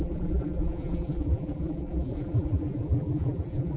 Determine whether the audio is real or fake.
fake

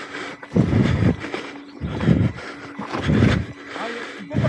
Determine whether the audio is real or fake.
real